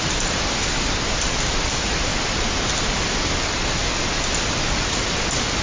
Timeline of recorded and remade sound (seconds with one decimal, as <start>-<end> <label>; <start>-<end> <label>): 0.0-5.6 recorded

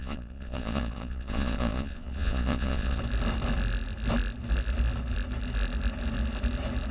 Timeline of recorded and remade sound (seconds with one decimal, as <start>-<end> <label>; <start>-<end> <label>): 0.0-3.0 remade; 3.0-6.9 recorded

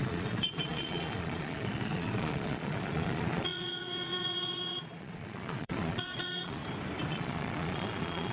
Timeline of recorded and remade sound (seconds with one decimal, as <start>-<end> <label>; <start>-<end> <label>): 0.0-6.6 remade; 6.6-7.1 recorded; 7.1-8.3 remade

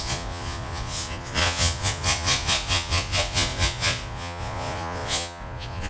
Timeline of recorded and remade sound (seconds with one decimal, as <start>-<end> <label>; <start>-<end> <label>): 0.0-5.9 remade

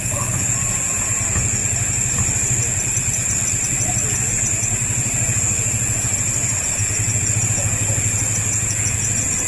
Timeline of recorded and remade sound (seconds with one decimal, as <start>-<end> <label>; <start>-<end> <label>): 0.0-1.6 remade; 1.6-4.3 recorded; 4.3-6.1 remade; 6.1-6.6 recorded; 6.6-9.5 remade